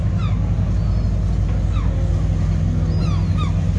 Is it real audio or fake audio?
real